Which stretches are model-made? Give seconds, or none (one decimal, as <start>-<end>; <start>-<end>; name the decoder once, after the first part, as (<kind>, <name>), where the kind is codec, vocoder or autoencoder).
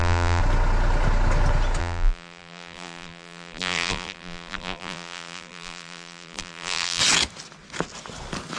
0.0-0.4 (vocoder, BigVGAN v2); 1.8-7.0